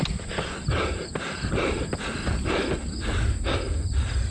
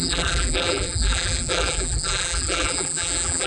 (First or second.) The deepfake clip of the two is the second